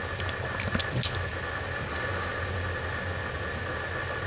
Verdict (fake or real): real